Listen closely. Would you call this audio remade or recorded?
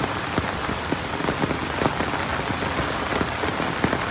recorded